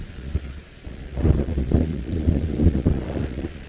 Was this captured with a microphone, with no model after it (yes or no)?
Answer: no